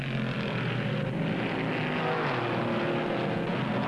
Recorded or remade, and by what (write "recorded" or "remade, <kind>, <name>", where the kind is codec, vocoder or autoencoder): recorded